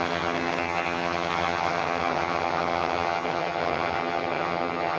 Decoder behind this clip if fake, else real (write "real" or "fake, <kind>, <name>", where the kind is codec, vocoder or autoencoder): fake, vocoder, HiFi-GAN